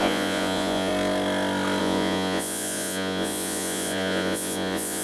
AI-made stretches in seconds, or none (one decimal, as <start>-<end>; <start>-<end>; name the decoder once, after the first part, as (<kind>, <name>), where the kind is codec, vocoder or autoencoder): 0.0-0.9 (vocoder, Vocos); 1.8-5.0